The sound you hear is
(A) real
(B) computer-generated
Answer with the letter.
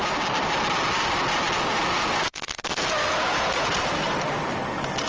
A